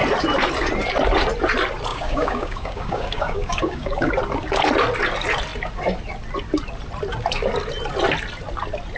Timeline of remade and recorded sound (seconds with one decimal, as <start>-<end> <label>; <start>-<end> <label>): 0.0-1.9 recorded; 1.9-4.1 remade; 4.1-9.0 recorded

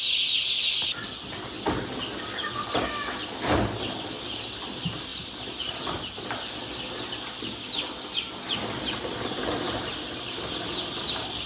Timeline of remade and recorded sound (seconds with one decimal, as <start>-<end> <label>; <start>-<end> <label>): 0.0-11.5 recorded

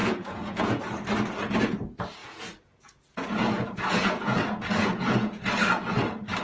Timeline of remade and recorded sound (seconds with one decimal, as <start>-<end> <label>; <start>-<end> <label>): 0.0-0.8 remade; 0.8-2.2 recorded; 2.2-5.4 remade; 5.4-6.4 recorded

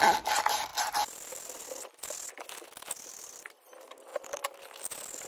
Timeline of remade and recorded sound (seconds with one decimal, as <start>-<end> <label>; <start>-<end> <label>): 0.0-0.7 recorded; 0.7-2.3 remade; 2.3-5.3 recorded

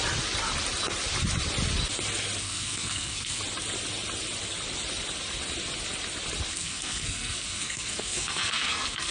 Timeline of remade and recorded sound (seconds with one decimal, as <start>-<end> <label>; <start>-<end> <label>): 0.0-2.4 recorded; 2.4-3.4 remade; 3.4-6.5 recorded; 6.5-9.1 remade